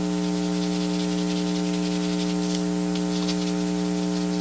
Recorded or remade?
recorded